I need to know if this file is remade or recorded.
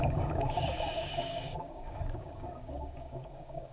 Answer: remade